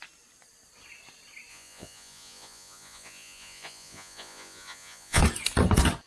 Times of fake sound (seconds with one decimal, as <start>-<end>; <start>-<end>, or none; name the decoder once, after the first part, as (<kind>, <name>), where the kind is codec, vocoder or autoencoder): 1.5-5.2 (vocoder, Vocos)